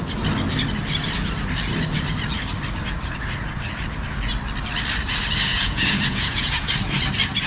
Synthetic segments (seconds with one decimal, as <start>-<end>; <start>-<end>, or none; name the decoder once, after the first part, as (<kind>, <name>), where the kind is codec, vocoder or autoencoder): 5.5-6.7 (vocoder, Vocos)